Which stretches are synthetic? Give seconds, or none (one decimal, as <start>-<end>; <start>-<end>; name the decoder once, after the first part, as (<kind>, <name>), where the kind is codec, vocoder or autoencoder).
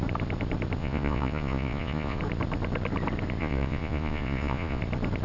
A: 0.8-2.2 (vocoder, Vocos); 3.4-4.8